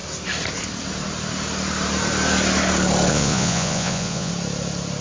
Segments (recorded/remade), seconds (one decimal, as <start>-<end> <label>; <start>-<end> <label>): 0.0-3.1 recorded; 3.1-4.3 remade; 4.3-5.0 recorded